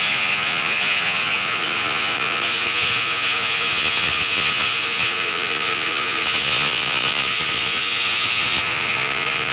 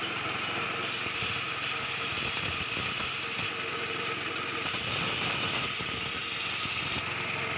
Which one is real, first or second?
second